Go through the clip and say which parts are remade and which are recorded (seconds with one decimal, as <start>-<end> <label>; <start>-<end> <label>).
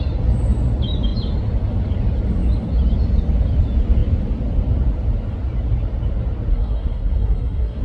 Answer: 0.0-6.5 recorded; 6.5-7.8 remade